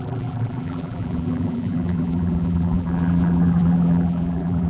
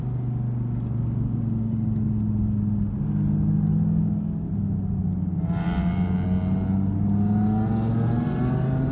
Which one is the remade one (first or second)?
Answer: first